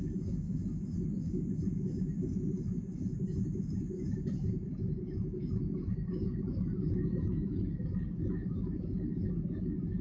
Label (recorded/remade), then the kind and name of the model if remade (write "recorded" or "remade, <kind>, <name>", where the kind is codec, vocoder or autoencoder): remade, autoencoder, DAC-VAE